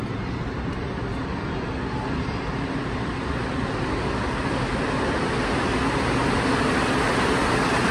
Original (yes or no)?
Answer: yes